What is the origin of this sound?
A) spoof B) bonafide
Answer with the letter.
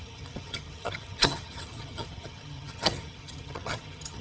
A